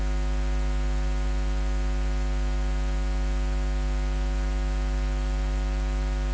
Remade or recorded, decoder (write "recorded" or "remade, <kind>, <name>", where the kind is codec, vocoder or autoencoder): recorded